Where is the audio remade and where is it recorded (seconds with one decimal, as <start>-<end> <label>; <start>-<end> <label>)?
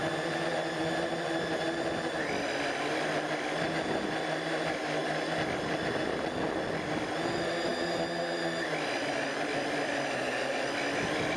0.0-11.4 recorded